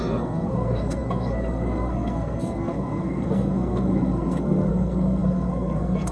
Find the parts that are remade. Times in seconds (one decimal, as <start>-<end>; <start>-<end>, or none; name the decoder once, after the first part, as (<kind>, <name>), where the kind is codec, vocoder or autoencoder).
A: 0.0-6.1 (codec, SNAC)